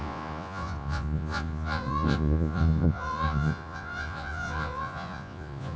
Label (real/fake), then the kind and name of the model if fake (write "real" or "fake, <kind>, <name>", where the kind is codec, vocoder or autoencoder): fake, vocoder, Vocos